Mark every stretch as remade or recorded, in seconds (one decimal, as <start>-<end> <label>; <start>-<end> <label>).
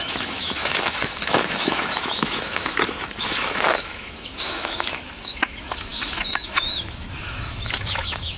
0.0-8.4 remade